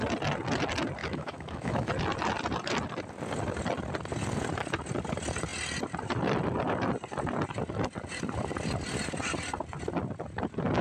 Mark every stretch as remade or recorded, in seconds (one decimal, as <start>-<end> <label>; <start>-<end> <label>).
0.0-1.0 recorded; 1.0-1.9 remade; 1.9-10.8 recorded